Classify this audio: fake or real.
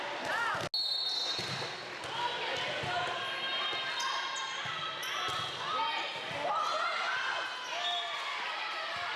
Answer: real